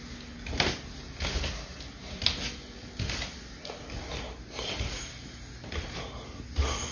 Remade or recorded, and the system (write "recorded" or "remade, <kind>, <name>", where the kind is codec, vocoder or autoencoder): recorded